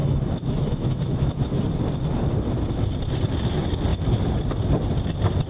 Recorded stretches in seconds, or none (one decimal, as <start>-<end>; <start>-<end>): 1.6-5.5